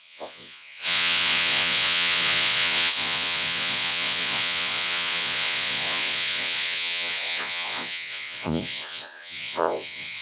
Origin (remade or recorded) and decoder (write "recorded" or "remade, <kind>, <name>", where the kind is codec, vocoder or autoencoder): remade, vocoder, Vocos